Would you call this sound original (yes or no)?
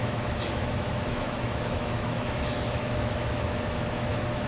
no